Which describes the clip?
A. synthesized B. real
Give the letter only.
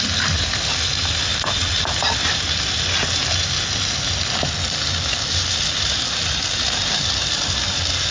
B